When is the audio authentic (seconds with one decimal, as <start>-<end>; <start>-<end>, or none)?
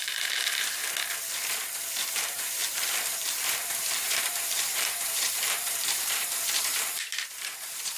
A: 0.8-2.1